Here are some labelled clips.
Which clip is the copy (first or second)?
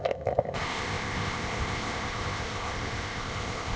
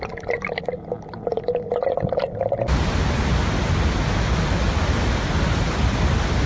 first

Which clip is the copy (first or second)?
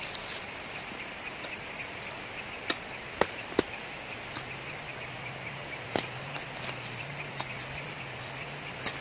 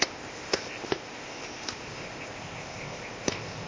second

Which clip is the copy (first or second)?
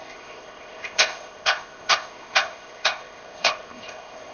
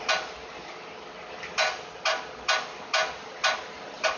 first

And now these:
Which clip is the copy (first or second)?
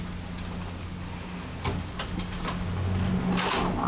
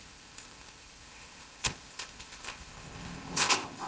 second